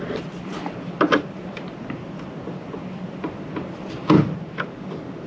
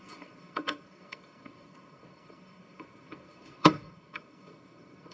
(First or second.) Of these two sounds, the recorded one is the first